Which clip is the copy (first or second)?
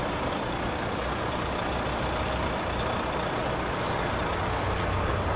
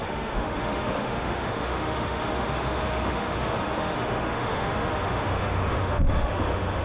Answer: second